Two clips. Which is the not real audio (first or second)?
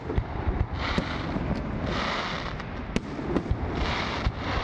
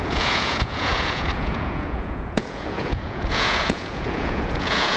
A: second